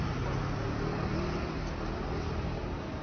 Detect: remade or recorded recorded